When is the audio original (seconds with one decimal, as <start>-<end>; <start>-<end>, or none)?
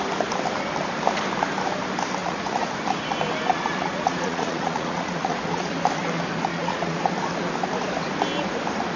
0.0-2.2; 2.7-3.5; 5.7-6.5; 7.0-9.0